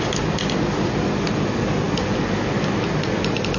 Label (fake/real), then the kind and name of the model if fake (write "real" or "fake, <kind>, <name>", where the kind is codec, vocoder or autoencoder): real